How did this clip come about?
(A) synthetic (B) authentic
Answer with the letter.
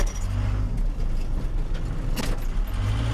B